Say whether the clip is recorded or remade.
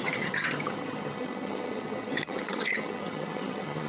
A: remade